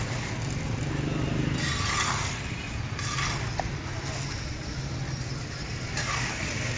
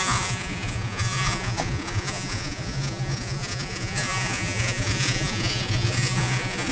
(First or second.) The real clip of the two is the first